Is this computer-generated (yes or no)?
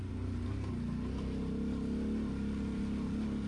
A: no